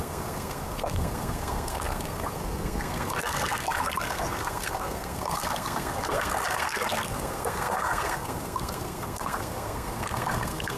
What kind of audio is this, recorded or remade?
remade